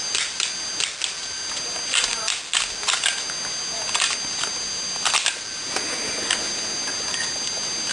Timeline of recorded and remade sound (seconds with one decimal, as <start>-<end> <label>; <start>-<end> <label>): 0.0-7.9 recorded